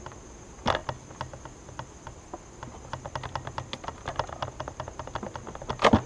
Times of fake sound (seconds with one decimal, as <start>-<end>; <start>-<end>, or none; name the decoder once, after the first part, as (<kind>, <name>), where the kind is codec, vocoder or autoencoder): none